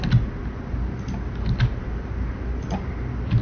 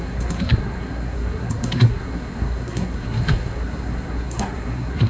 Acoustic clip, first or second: first